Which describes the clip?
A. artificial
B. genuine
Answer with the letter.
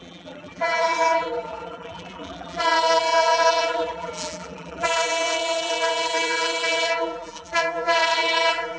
A